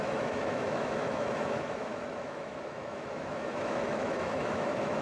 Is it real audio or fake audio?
fake